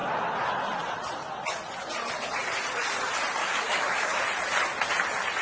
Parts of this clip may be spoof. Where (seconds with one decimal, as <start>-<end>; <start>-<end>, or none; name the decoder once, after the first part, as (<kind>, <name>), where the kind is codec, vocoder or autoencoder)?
3.4-4.2 (autoencoder, DAC-VAE)